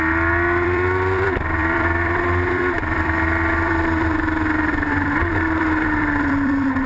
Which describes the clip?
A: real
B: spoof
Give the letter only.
B